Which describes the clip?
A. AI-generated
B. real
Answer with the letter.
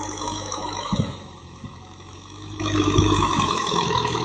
A